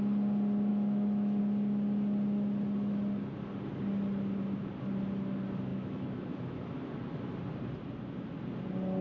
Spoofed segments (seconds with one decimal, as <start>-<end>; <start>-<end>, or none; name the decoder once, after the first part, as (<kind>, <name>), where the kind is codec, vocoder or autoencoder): 0.7-1.4 (autoencoder, DAC-VAE); 5.7-6.6